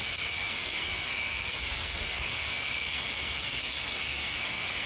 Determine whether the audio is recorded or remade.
remade